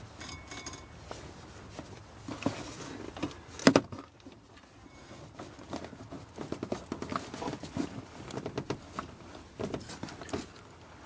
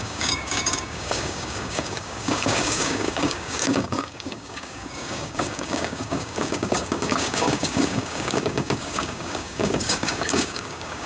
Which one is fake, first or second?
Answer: second